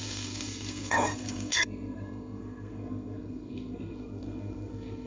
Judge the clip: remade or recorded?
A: remade